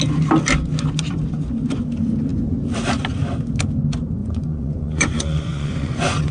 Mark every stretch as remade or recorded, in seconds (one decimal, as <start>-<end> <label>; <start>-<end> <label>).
0.0-4.2 recorded; 4.2-6.3 remade

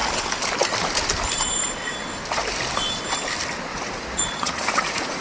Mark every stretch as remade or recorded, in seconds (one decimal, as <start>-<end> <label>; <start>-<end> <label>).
0.0-3.7 recorded; 3.7-5.2 remade

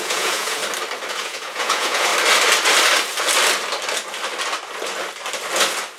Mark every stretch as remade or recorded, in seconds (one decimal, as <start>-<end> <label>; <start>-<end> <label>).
0.0-0.6 remade; 0.6-1.1 recorded; 1.1-2.1 remade; 2.1-6.0 recorded